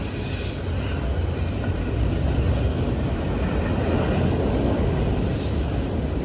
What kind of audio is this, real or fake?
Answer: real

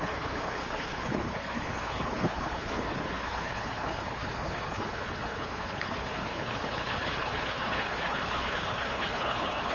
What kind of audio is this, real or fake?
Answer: fake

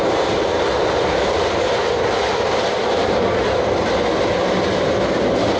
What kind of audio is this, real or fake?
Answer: real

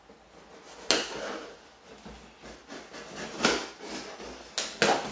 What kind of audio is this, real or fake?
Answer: real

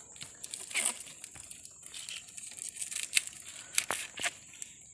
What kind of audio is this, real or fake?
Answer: real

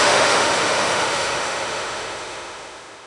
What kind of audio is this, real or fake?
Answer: fake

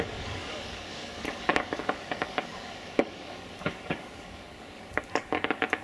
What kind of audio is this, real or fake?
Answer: fake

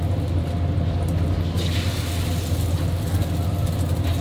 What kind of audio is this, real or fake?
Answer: real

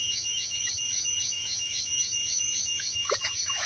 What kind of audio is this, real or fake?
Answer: fake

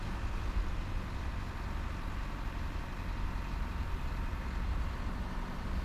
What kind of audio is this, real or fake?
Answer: real